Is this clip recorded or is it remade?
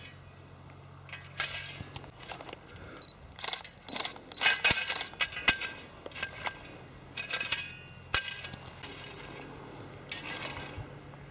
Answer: recorded